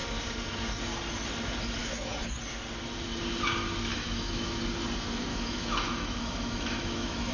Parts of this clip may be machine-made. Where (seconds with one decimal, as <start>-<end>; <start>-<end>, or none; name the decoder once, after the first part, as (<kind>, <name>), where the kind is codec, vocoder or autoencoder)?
1.8-2.4 (autoencoder, DAC-VAE); 3.9-4.6; 5.3-7.3